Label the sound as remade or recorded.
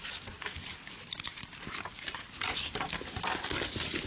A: recorded